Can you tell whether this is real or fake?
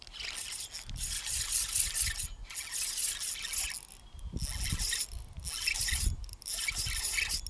real